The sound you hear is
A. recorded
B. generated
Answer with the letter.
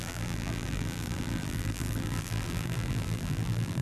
B